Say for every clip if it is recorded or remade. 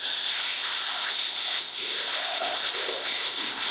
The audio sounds remade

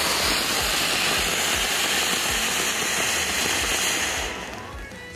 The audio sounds recorded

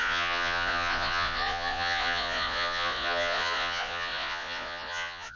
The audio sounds remade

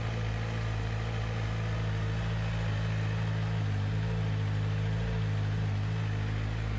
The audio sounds recorded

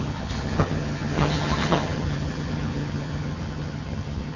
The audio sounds remade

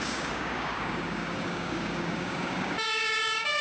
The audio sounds remade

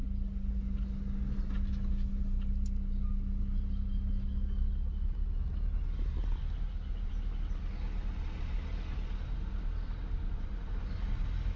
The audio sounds recorded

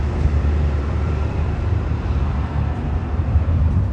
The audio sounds remade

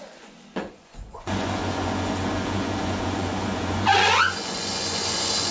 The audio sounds remade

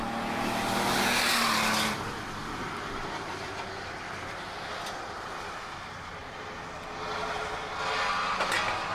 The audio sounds recorded